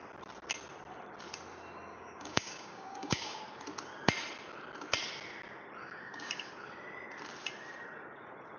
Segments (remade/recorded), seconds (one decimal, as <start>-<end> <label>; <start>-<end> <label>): 0.0-1.9 recorded; 1.9-3.4 remade; 3.4-5.8 recorded; 5.8-6.5 remade; 6.5-8.6 recorded